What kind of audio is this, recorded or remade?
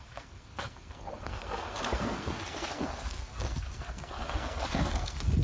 remade